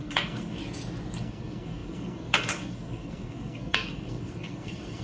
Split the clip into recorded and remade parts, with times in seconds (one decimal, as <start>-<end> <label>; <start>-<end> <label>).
0.0-0.6 remade; 0.6-1.2 recorded; 1.2-5.0 remade